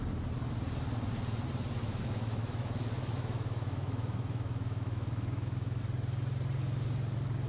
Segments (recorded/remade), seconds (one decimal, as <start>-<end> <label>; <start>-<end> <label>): 0.0-1.8 recorded; 1.8-5.8 remade; 5.8-7.5 recorded